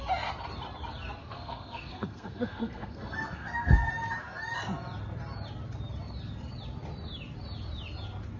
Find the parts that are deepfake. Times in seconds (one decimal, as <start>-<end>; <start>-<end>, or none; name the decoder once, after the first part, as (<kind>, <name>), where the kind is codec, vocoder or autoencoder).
1.2-3.9 (codec, SNAC)